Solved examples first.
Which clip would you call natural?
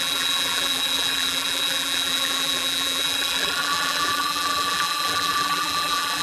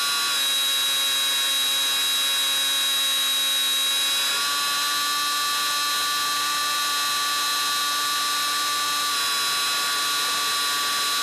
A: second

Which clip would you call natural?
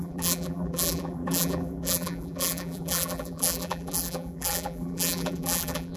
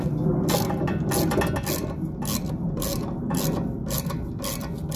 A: second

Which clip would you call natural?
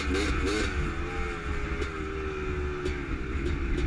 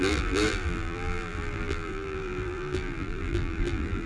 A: first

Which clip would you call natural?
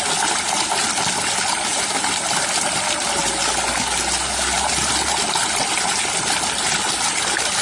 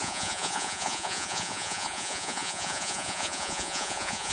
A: first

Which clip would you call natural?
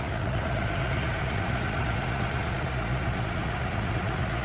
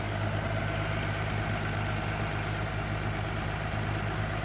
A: second